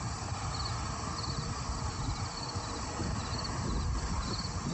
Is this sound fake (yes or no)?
no